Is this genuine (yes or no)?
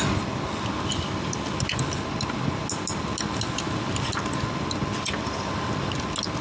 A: yes